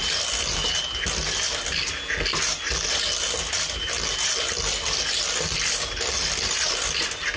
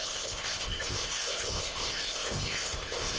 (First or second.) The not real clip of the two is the second